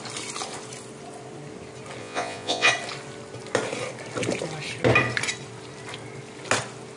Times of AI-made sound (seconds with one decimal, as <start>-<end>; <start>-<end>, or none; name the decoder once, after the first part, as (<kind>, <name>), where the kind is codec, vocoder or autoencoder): 2.0-2.7 (vocoder, Vocos)